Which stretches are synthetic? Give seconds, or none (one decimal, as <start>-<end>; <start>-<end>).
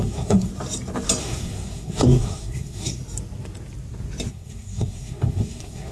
0.0-0.5; 1.2-3.0; 4.3-5.9